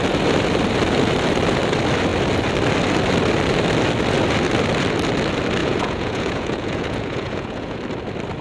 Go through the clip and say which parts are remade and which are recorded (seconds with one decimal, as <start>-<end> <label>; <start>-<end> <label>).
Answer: 0.0-5.6 recorded; 5.6-7.8 remade; 7.8-8.4 recorded